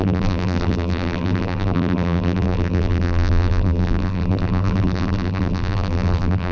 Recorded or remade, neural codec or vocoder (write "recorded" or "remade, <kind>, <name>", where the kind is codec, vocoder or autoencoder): remade, vocoder, BigVGAN v2